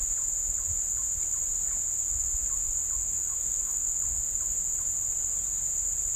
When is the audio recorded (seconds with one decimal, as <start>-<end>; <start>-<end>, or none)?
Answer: 0.0-3.0; 3.9-6.2